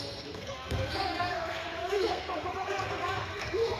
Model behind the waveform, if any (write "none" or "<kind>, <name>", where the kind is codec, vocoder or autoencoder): codec, SNAC